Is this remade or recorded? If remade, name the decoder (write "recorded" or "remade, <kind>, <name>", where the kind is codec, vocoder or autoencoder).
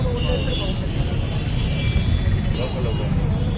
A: recorded